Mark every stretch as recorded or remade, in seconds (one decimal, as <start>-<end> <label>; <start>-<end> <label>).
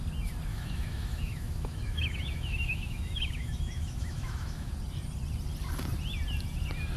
0.0-0.5 recorded; 0.5-4.7 remade; 4.7-7.0 recorded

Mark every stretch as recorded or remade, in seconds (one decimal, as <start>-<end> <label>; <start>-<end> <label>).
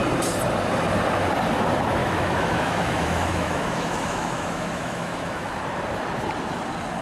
0.0-2.0 recorded; 2.0-5.6 remade; 5.6-7.0 recorded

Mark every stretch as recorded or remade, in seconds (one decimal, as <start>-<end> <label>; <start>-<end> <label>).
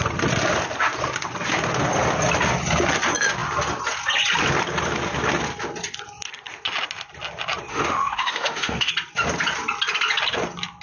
0.0-7.7 recorded; 7.7-8.9 remade; 8.9-10.8 recorded